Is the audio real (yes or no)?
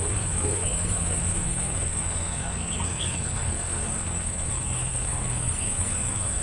no